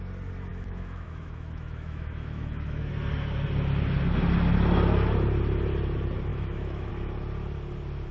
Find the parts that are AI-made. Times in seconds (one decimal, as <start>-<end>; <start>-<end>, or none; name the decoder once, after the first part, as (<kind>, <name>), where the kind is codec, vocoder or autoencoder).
0.5-2.9 (autoencoder, DAC-VAE); 6.3-6.9